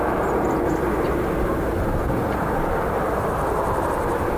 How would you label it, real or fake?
real